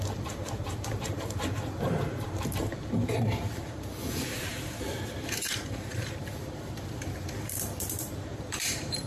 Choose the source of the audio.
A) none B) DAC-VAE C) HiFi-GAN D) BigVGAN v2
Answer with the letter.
D